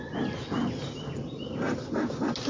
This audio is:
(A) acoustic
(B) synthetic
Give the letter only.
A